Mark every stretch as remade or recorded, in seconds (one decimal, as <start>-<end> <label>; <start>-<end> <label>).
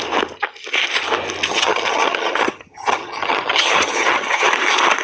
0.0-1.5 recorded; 1.5-4.5 remade; 4.5-5.0 recorded